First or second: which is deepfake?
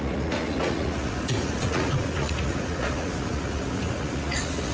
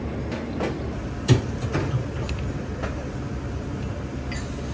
first